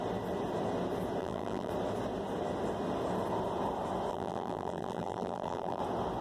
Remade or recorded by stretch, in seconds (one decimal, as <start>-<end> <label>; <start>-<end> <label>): 0.0-1.2 recorded; 1.2-1.7 remade; 1.7-4.1 recorded; 4.1-5.8 remade; 5.8-6.2 recorded